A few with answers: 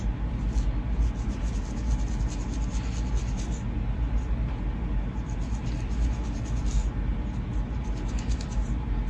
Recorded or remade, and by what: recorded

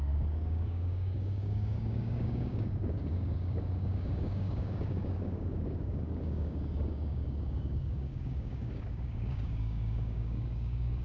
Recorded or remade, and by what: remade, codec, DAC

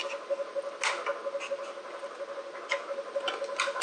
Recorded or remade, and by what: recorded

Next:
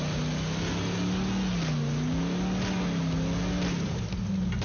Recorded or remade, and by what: recorded